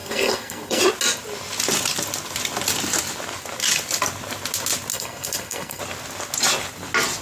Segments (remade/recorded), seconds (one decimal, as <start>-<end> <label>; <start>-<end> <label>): 0.0-0.8 remade; 0.8-4.9 recorded; 4.9-5.8 remade; 5.8-7.2 recorded